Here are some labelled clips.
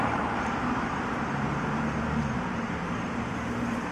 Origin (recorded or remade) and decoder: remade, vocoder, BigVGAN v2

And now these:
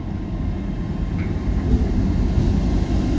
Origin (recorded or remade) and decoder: recorded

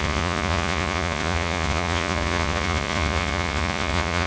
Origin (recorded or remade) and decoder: remade, vocoder, Vocos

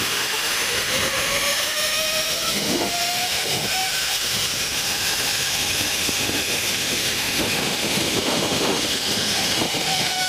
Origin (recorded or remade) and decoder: remade, autoencoder, DAC-VAE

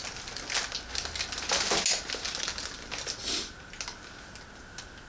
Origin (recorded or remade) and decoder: recorded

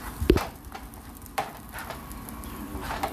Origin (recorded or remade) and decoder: remade, vocoder, BigVGAN v2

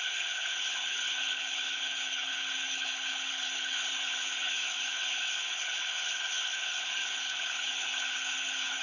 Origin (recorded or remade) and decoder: remade, codec, HILCodec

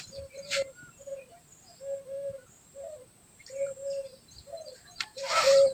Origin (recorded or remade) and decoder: remade, vocoder, BigVGAN v2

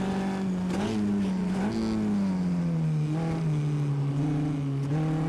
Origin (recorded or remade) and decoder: recorded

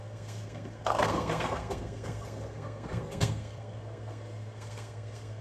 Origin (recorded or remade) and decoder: remade, codec, SNAC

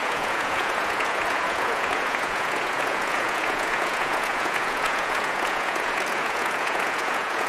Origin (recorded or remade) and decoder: remade, vocoder, Vocos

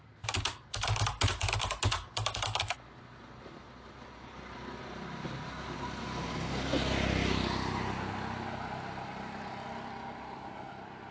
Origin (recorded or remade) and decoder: recorded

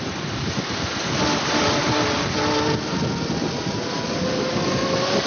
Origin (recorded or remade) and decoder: recorded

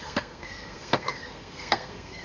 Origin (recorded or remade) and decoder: remade, codec, SNAC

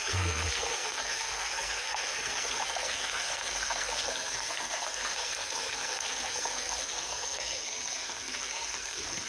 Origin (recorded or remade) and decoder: remade, codec, SNAC